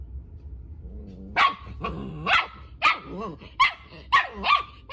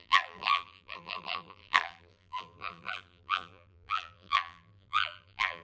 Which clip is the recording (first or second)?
first